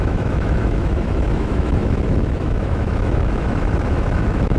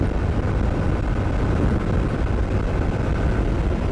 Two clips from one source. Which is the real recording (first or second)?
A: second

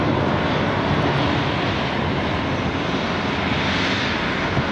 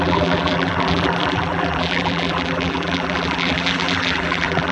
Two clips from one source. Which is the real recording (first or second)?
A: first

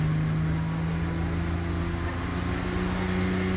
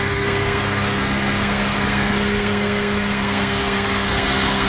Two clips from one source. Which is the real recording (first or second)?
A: first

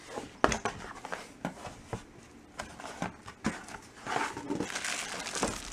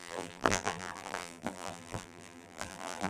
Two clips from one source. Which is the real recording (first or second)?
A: first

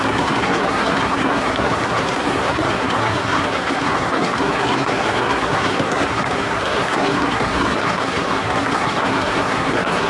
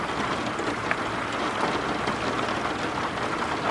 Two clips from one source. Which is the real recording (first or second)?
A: second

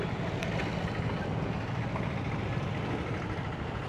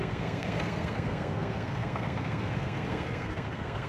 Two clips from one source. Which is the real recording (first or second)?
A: first